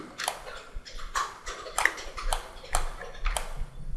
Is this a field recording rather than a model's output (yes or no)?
no